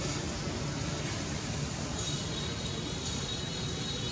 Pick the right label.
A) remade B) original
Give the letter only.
B